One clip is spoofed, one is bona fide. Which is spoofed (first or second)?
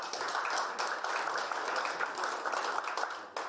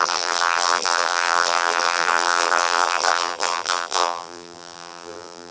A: second